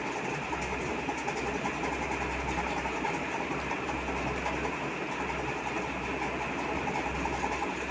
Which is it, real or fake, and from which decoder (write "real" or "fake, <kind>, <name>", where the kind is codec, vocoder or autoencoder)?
real